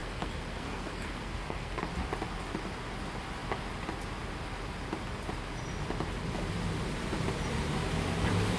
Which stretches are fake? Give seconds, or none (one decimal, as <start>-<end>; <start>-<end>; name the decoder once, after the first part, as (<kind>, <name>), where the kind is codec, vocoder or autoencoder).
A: 0.0-1.9 (codec, SNAC)